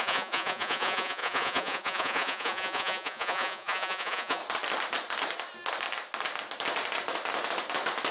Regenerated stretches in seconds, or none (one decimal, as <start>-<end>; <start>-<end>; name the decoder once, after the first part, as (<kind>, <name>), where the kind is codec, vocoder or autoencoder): 0.0-4.4 (vocoder, Vocos)